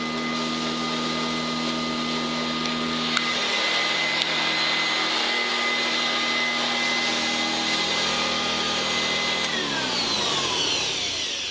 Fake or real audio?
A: real